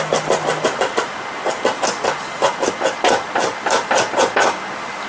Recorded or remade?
recorded